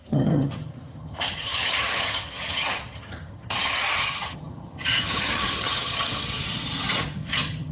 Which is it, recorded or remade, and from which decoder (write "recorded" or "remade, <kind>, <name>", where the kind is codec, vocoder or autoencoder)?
remade, vocoder, HiFi-GAN